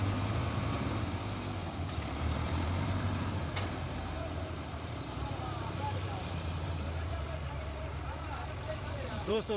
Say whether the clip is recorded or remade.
remade